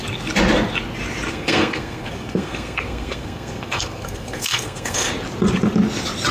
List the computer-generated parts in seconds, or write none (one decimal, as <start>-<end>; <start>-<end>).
1.3-5.1